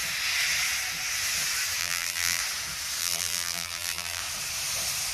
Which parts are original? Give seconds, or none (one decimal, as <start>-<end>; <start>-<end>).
0.0-1.8; 2.4-3.0; 4.2-5.1